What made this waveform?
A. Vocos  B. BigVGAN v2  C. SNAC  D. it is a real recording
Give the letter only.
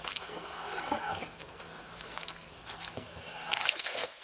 C